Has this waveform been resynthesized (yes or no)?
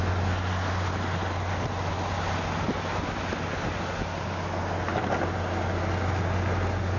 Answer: no